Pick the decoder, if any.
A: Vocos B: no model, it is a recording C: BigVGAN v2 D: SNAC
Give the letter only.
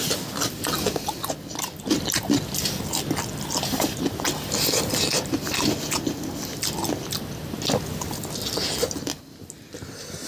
B